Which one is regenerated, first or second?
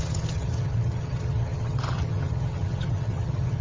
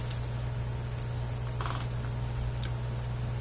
first